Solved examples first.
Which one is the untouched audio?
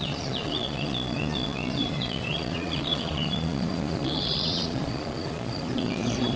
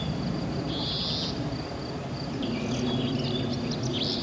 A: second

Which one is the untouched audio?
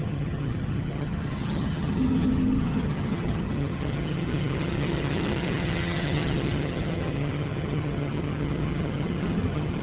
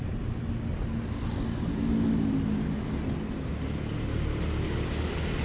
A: second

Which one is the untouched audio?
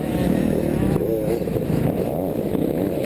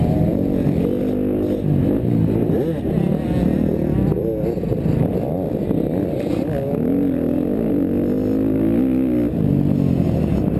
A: second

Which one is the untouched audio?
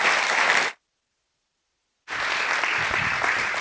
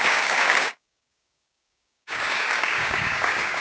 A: first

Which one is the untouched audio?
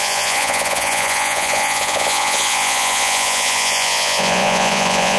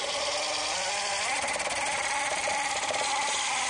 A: second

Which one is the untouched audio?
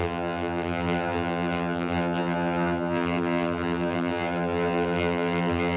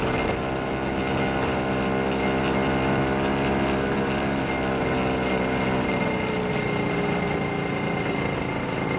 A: second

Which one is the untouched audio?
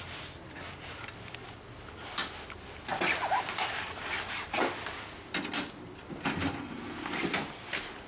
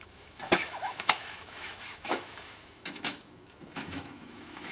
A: first